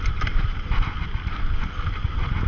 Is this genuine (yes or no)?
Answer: yes